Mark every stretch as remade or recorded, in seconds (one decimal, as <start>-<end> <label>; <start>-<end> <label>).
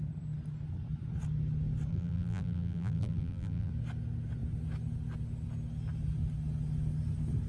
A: 0.0-1.9 recorded; 1.9-3.7 remade; 3.7-7.5 recorded